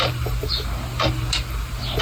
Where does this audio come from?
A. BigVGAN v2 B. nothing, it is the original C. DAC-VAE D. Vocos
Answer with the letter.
B